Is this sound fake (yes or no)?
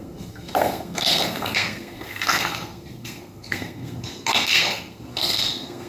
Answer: yes